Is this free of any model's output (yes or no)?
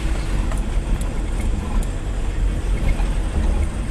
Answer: yes